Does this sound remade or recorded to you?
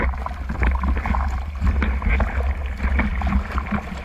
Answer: recorded